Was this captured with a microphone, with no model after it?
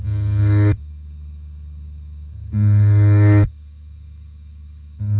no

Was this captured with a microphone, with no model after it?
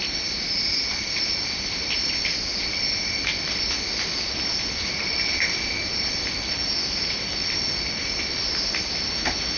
yes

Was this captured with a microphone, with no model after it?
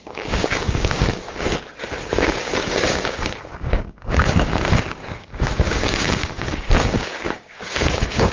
no